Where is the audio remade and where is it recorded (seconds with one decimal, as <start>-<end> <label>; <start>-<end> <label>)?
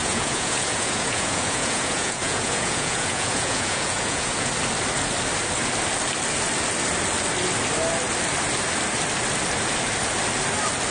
0.0-4.5 remade; 4.5-10.9 recorded